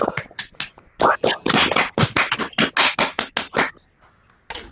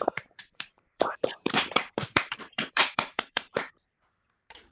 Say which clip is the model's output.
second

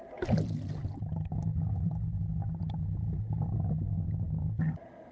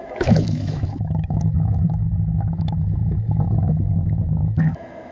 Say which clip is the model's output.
second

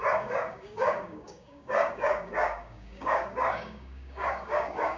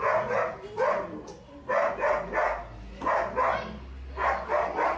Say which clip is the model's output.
first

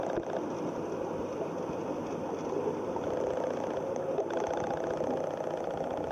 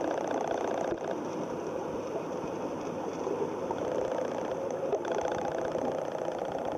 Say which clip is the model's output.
second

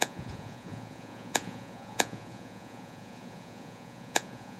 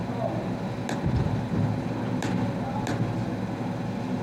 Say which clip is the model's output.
first